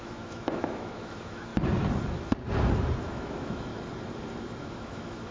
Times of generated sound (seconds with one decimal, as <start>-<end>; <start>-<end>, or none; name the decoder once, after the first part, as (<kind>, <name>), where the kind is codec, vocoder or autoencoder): 0.0-1.5 (autoencoder, DAC-VAE); 3.0-3.7; 4.6-5.3